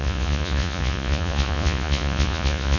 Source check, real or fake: fake